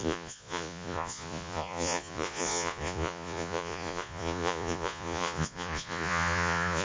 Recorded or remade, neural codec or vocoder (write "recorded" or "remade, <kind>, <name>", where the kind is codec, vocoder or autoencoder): remade, vocoder, Vocos